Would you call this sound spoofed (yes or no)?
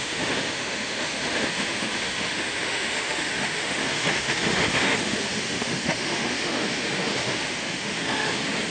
yes